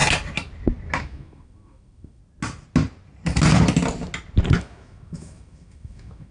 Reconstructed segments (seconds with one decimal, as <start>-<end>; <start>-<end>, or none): 1.0-2.2; 4.6-6.3